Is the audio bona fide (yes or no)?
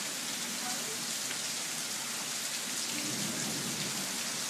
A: yes